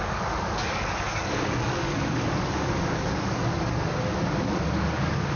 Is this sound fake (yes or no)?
yes